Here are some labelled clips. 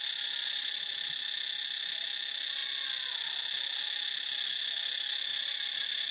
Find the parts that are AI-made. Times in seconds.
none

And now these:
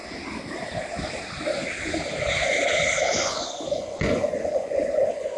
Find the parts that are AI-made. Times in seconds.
3.2-5.4 (vocoder, Vocos)

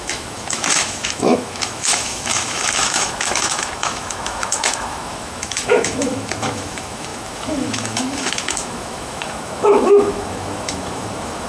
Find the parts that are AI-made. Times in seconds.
0.0-11.5 (autoencoder, DAC-VAE)